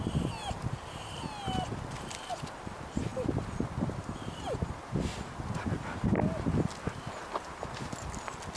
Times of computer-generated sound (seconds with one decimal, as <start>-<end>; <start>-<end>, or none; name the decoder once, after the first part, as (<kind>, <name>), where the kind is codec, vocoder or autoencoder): none